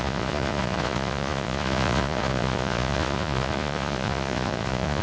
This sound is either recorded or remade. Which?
remade